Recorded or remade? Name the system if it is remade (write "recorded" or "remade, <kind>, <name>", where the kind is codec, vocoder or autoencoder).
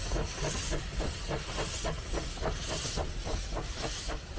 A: recorded